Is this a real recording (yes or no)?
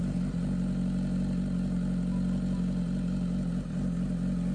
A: yes